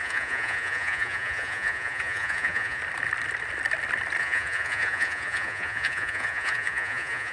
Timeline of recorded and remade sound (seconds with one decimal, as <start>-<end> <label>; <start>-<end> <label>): 0.0-2.8 remade; 2.8-4.2 recorded; 4.2-7.3 remade